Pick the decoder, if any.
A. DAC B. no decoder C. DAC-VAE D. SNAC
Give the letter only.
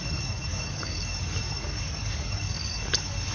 A